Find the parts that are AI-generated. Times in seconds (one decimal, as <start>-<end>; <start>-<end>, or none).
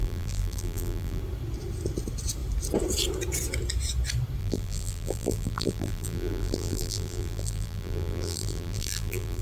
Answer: 0.0-1.2; 4.4-9.4